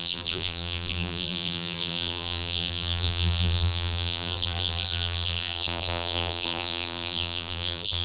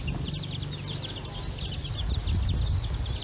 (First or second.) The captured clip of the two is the second